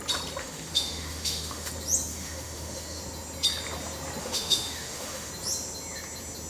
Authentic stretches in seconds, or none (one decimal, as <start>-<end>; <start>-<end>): 0.0-0.4; 1.7-2.1; 3.0-4.2; 5.3-6.5

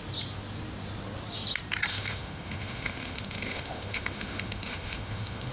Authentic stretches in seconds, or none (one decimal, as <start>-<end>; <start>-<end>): 0.0-1.9

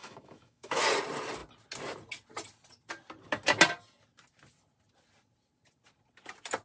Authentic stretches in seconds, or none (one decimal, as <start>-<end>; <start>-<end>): 0.8-6.6

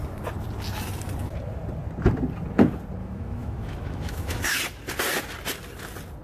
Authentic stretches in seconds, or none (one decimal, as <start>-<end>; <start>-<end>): 0.0-3.0; 4.6-6.2

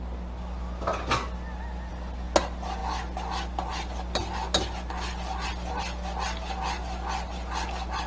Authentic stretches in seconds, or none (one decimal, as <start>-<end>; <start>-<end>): 0.0-8.1

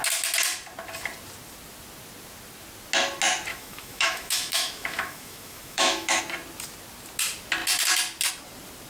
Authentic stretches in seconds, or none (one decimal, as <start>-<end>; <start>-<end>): 0.0-3.5; 6.2-8.9

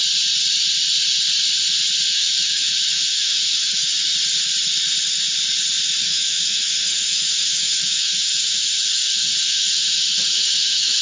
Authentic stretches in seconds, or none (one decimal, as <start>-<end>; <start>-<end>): 0.0-2.1; 4.1-6.0

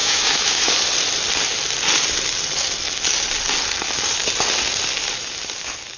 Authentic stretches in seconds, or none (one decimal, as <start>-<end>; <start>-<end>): 0.7-6.0